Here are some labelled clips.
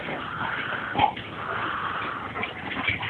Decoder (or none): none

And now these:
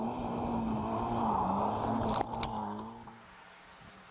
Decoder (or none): none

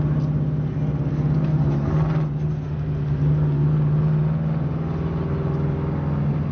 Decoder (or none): none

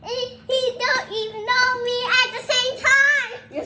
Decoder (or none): none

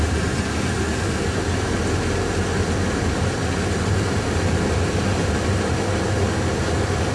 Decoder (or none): none